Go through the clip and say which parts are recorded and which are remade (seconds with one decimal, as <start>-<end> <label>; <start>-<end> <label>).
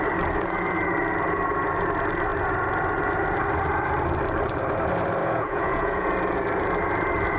0.0-5.2 recorded; 5.2-6.1 remade; 6.1-7.4 recorded